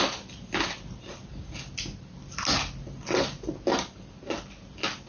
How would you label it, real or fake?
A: real